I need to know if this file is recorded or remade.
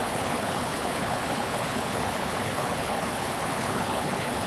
remade